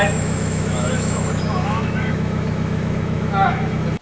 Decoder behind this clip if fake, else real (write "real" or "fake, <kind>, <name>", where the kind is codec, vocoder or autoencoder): fake, autoencoder, DAC-VAE